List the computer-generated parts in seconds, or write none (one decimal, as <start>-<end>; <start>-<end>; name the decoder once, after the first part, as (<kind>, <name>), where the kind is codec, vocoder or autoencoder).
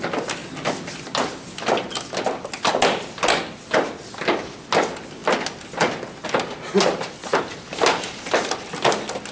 none